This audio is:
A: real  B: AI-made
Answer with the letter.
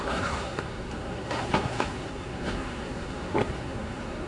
B